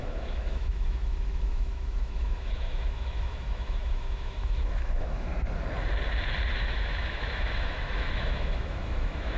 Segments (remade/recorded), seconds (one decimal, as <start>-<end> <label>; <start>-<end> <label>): 0.0-5.3 remade; 5.3-6.5 recorded; 6.5-9.4 remade